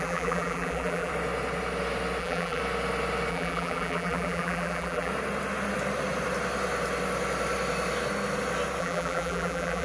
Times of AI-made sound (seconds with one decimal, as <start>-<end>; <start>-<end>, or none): 0.0-1.1; 2.2-2.6; 3.3-5.1; 8.8-9.8